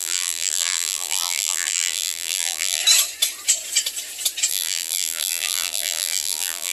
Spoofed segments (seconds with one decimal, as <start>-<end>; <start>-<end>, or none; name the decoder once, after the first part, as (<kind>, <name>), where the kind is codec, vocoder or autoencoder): 0.0-2.8 (vocoder, BigVGAN v2); 4.5-6.7